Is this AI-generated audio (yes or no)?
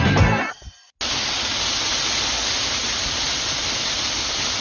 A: no